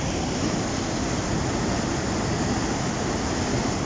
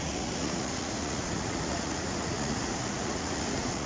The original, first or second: first